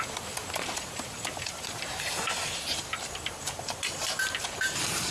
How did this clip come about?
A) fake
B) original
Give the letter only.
A